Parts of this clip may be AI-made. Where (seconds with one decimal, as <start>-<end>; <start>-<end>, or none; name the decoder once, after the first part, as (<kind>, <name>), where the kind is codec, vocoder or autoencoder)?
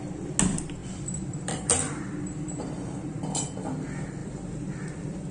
0.8-3.2 (vocoder, BigVGAN v2); 4.2-5.3